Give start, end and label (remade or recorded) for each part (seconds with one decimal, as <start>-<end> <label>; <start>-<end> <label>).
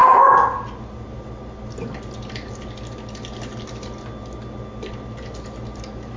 0.0-6.2 recorded